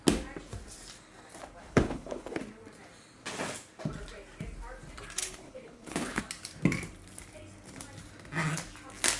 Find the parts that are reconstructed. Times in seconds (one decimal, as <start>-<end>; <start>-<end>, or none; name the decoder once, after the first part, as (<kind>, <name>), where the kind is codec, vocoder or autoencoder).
1.6-2.4 (codec, HILCodec); 5.2-6.2